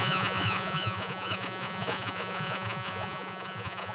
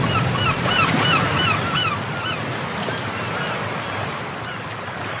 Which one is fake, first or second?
first